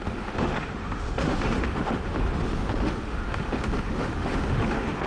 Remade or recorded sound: remade